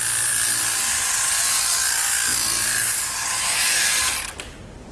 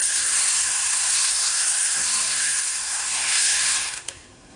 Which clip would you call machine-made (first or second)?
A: second